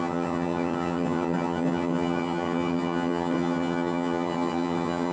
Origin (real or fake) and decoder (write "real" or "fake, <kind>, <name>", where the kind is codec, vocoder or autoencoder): fake, vocoder, HiFi-GAN